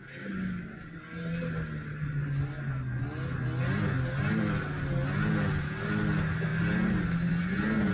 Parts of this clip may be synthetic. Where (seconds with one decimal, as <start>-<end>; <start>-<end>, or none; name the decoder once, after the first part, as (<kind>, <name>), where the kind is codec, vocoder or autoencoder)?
none